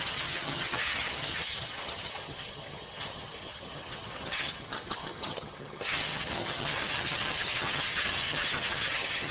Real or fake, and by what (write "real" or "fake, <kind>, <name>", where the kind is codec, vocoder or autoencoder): fake, vocoder, HiFi-GAN